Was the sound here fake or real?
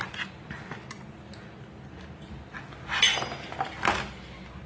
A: real